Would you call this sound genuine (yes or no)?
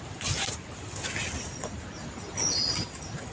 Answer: yes